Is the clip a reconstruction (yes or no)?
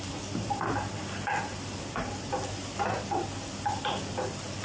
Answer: no